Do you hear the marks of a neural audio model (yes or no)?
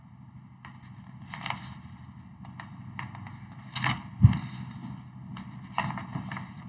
no